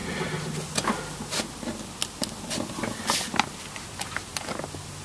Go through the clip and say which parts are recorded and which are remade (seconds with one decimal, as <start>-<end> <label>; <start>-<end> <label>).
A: 0.0-5.0 recorded